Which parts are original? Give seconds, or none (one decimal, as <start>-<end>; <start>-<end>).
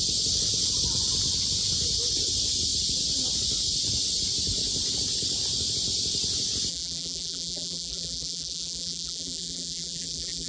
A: 0.0-6.7